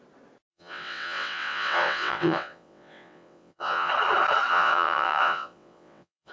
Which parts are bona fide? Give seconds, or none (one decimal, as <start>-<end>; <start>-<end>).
0.0-0.5; 3.9-4.5